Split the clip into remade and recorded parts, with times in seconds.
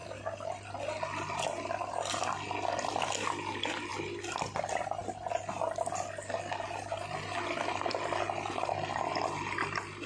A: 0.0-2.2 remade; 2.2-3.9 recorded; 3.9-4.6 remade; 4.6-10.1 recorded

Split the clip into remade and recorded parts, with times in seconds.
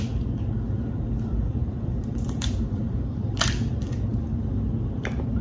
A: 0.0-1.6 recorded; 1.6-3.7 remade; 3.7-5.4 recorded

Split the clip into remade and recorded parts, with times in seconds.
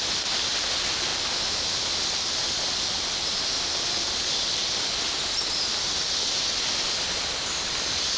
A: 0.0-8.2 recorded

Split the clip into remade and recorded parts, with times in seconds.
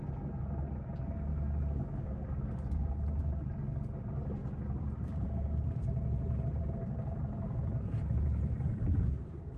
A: 0.0-4.4 recorded; 4.4-9.6 remade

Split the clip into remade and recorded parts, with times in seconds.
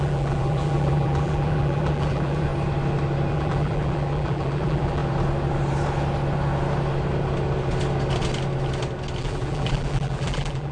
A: 0.0-2.5 remade; 2.5-3.3 recorded; 3.3-5.0 remade; 5.0-9.2 recorded; 9.2-10.7 remade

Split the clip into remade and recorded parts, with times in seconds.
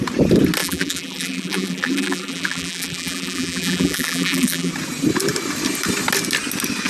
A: 0.0-0.6 recorded; 0.6-4.7 remade; 4.7-6.9 recorded